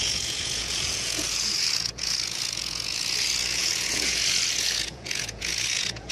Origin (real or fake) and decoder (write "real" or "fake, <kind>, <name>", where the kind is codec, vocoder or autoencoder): fake, vocoder, Vocos